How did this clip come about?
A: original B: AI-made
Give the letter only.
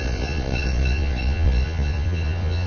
B